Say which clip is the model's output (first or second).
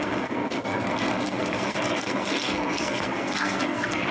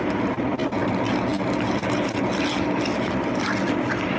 first